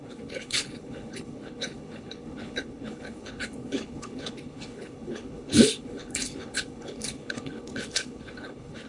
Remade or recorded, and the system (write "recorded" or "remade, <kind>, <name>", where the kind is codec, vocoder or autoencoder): remade, codec, HILCodec